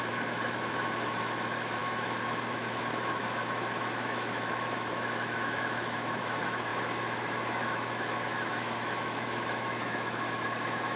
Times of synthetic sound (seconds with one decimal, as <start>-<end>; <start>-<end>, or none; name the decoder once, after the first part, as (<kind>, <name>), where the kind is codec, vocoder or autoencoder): 0.0-11.0 (autoencoder, DAC-VAE)